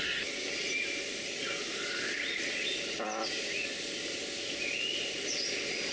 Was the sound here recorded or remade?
recorded